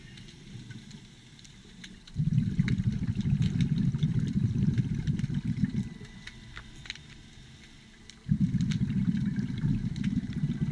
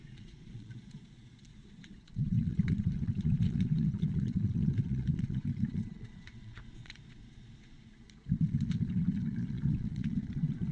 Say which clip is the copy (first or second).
second